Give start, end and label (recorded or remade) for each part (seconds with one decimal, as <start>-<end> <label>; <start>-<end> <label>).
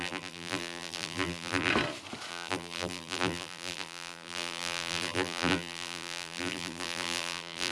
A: 0.0-1.7 remade; 1.7-2.3 recorded; 2.3-7.7 remade